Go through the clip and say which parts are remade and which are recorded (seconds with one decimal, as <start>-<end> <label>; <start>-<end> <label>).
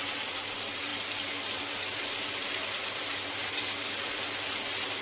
0.0-5.0 recorded